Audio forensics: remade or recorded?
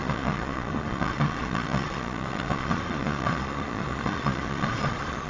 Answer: remade